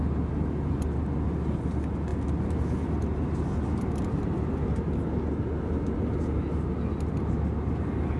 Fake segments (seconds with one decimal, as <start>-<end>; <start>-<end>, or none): none